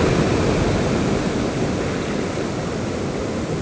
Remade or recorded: recorded